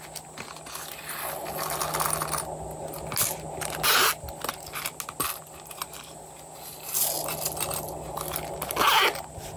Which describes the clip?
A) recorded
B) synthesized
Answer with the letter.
A